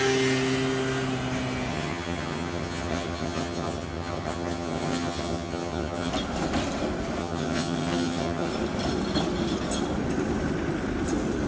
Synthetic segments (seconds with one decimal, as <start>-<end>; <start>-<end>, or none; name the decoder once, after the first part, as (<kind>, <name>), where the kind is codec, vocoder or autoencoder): 1.7-6.1 (vocoder, HiFi-GAN); 7.2-8.5